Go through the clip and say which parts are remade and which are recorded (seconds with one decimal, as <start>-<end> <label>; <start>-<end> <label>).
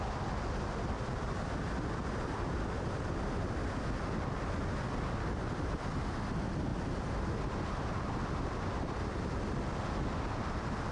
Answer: 0.0-10.9 recorded